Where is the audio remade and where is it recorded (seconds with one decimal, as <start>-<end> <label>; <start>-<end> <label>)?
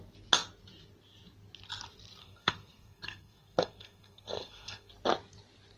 0.0-2.2 recorded; 2.2-4.9 remade; 4.9-5.8 recorded